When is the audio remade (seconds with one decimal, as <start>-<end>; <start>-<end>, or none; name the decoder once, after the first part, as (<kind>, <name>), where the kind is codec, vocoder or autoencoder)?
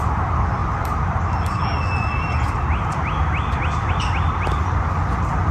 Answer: none